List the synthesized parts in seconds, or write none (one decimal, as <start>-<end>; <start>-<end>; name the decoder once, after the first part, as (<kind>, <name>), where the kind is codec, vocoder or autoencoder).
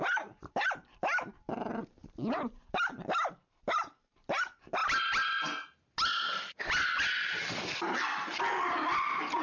0.0-2.0 (vocoder, BigVGAN v2); 3.3-4.8